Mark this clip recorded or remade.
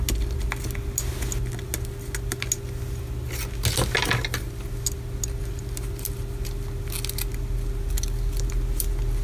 recorded